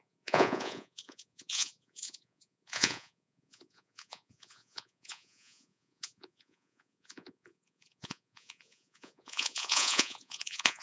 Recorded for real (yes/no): no